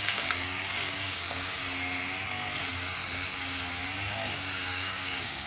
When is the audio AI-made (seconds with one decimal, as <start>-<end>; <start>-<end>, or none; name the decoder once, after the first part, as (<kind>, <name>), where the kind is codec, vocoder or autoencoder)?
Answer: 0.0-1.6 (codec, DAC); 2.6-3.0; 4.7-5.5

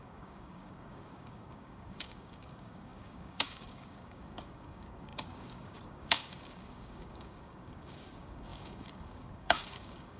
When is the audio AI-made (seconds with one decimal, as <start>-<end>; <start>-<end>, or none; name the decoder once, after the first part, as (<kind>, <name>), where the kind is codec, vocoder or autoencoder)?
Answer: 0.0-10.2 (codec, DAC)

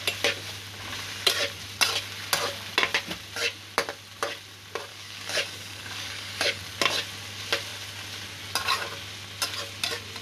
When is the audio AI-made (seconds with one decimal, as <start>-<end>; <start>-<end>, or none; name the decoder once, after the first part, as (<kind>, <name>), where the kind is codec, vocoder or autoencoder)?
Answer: 4.9-6.6 (codec, DAC)